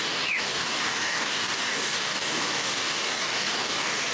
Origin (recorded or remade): remade